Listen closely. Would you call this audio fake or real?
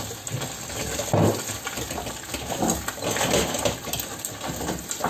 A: real